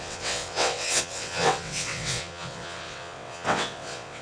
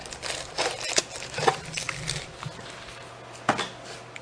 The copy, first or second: first